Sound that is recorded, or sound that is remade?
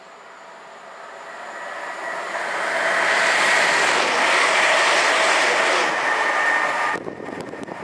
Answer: recorded